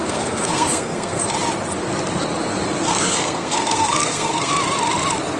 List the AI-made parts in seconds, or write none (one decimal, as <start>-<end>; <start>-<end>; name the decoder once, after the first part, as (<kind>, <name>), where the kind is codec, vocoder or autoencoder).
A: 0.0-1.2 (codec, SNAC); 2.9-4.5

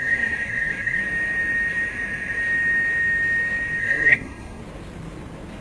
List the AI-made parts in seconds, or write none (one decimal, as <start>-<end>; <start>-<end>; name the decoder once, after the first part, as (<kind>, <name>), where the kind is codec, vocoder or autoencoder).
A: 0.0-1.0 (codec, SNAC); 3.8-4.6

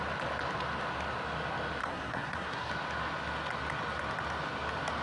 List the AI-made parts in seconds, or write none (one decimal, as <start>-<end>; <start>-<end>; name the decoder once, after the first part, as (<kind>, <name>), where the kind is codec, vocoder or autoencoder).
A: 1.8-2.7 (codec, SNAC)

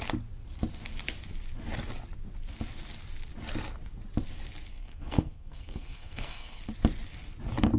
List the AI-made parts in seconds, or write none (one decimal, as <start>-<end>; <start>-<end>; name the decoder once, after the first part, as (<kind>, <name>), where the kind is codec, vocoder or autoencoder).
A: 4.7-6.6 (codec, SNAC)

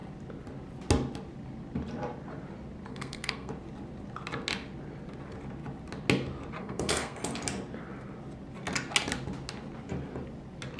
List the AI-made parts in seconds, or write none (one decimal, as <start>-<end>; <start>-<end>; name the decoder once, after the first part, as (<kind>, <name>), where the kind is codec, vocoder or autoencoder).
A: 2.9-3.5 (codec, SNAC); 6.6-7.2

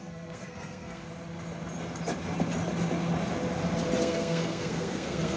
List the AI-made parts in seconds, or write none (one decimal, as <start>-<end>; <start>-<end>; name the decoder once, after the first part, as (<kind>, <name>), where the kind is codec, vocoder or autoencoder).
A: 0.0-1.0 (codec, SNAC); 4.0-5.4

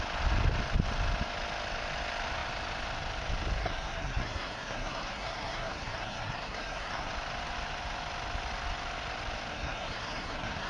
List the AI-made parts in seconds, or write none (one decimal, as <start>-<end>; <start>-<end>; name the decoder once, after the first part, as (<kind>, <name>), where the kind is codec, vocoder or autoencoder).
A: 3.6-7.1 (codec, SNAC); 9.5-10.7